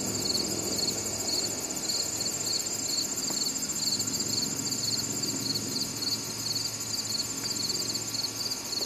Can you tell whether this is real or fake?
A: real